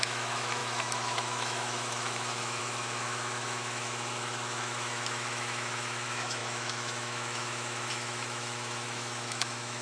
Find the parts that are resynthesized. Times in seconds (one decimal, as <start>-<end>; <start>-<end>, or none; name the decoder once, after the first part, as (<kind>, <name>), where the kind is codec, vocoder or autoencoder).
0.0-9.8 (autoencoder, DAC-VAE)